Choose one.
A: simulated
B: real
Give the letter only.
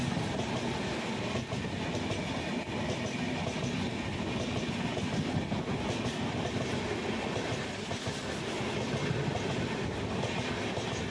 B